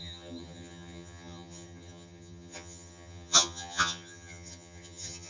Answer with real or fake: fake